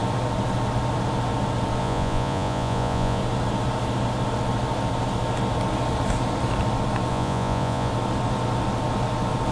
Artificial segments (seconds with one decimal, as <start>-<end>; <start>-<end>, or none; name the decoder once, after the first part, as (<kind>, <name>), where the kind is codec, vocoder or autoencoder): 1.8-3.2 (vocoder, Vocos); 7.1-7.9